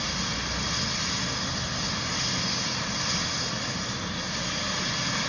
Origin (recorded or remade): recorded